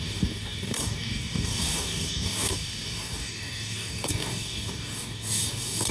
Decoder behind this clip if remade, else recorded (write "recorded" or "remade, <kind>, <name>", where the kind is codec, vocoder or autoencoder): remade, codec, DAC